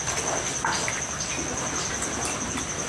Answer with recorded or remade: recorded